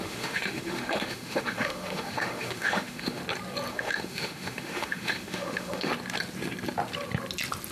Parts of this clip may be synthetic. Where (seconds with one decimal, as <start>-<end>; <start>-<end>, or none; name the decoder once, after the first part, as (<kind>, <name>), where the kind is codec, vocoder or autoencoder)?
0.0-3.2 (autoencoder, DAC-VAE); 3.7-5.9